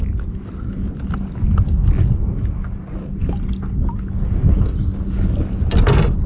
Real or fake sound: real